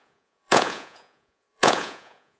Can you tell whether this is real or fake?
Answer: fake